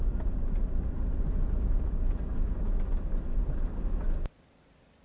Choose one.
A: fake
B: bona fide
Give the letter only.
B